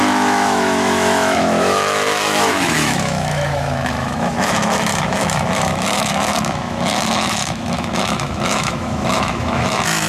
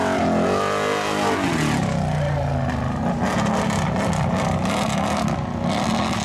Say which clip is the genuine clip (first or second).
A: second